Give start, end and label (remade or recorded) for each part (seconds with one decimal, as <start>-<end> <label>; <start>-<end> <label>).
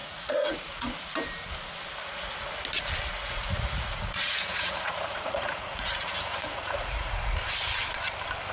0.0-0.9 remade; 0.9-2.0 recorded; 2.0-2.5 remade; 2.5-3.1 recorded; 3.1-7.3 remade; 7.3-8.5 recorded